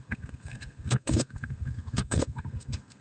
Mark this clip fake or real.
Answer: fake